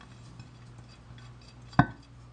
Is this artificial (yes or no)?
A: no